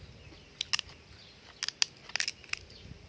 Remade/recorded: recorded